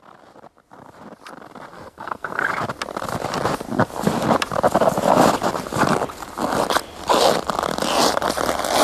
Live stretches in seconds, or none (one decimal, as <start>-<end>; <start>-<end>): 0.0-1.7; 2.4-8.8